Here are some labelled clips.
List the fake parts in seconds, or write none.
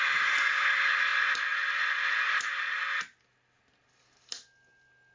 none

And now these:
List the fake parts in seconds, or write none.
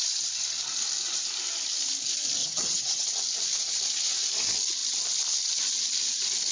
2.4-3.1 (vocoder, HiFi-GAN)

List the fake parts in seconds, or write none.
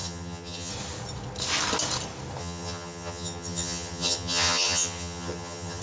0.0-0.7 (vocoder, HiFi-GAN); 2.4-5.8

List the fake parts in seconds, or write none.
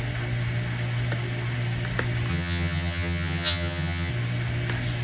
2.3-4.1 (vocoder, HiFi-GAN)